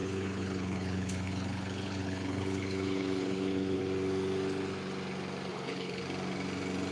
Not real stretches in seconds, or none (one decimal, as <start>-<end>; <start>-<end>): 0.0-3.8; 5.5-6.0